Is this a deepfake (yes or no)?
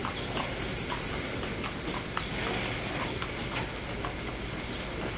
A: no